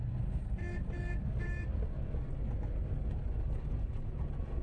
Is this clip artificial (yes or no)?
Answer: no